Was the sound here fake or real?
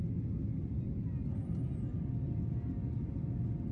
real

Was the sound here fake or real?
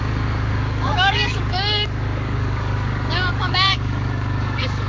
fake